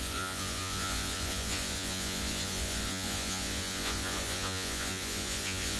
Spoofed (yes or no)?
yes